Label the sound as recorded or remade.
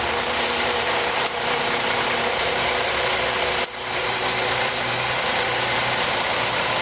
remade